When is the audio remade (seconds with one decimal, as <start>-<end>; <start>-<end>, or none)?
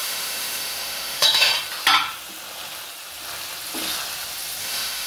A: 0.0-1.5; 4.6-5.1